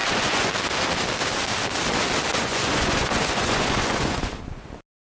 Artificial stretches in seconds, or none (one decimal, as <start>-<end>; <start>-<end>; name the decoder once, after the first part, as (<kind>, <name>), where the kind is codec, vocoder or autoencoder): 0.0-0.5 (vocoder, Vocos); 2.3-4.3